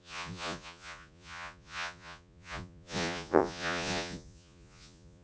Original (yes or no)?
no